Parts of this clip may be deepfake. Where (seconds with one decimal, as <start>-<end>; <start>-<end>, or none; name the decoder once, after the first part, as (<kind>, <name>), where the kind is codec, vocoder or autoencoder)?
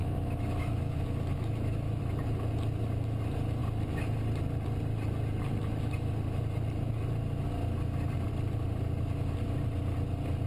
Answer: 0.0-2.0 (autoencoder, DAC-VAE)